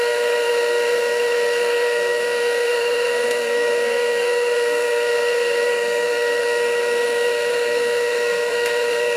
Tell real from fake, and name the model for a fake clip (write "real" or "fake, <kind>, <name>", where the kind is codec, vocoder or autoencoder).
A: fake, codec, SNAC